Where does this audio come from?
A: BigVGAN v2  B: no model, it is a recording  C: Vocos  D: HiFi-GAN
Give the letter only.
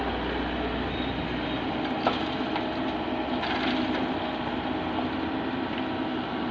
B